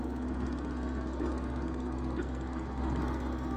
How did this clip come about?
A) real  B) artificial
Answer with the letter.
B